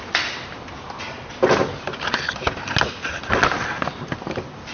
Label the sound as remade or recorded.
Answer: recorded